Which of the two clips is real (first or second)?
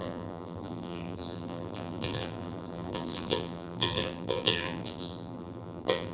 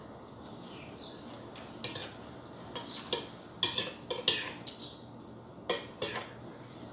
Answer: second